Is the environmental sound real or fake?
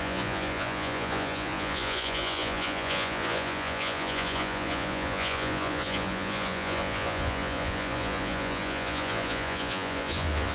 fake